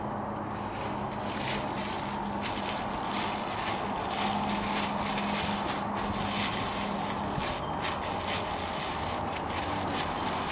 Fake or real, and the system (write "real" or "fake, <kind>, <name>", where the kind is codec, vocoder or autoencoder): real